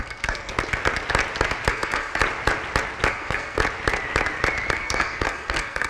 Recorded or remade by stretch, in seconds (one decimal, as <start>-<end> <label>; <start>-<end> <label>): 0.0-0.5 remade; 0.5-1.7 recorded; 1.7-2.2 remade; 2.2-3.1 recorded; 3.1-3.6 remade; 3.6-4.7 recorded; 4.7-5.9 remade